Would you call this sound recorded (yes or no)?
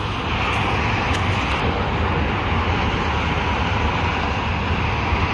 yes